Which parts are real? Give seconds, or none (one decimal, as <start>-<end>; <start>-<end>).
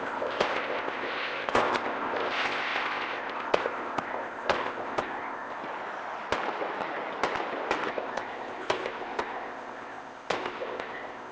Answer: 5.6-7.9